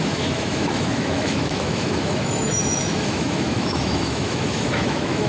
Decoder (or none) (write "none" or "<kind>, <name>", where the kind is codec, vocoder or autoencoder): autoencoder, DAC-VAE